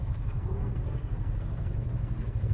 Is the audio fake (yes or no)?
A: yes